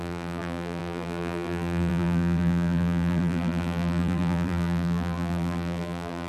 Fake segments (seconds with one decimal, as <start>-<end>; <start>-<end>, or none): 0.0-6.3